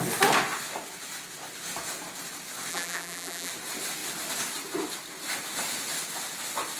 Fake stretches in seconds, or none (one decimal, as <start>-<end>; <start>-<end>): 2.7-3.5